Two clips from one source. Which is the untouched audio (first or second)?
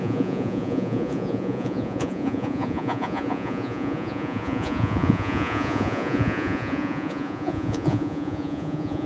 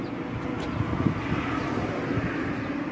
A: second